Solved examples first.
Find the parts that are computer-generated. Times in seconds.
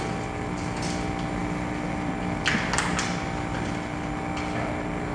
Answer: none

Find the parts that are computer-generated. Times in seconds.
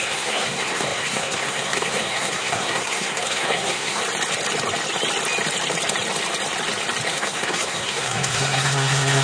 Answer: 0.0-4.0 (codec, SNAC); 7.1-9.2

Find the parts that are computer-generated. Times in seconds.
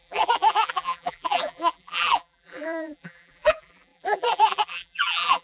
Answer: 0.0-5.4 (vocoder, BigVGAN v2)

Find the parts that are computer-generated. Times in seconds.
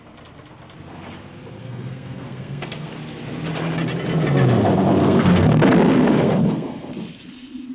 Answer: 1.6-2.9 (codec, SNAC); 5.0-6.9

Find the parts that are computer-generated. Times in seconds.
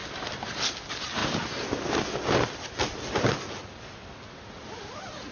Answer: none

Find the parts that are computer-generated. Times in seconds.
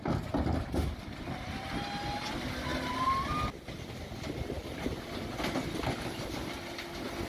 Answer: none